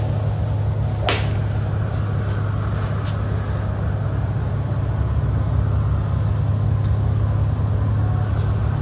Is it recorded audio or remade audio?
recorded